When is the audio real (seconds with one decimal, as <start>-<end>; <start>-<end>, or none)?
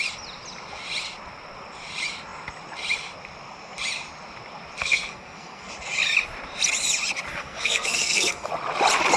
0.0-4.8; 5.7-7.3; 8.5-9.2